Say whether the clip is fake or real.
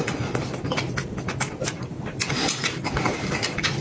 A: real